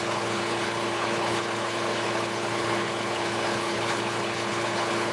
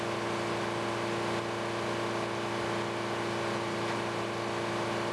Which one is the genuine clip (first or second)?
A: second